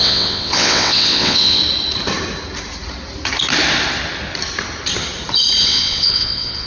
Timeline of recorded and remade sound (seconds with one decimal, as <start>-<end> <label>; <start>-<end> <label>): 0.0-1.6 remade; 1.6-5.6 recorded; 5.6-6.7 remade